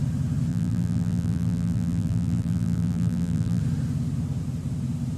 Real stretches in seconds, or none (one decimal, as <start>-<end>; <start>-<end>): 0.0-0.5; 3.6-5.2